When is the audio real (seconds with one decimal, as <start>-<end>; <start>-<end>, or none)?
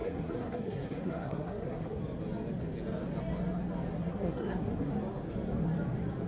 2.0-3.9; 4.9-6.3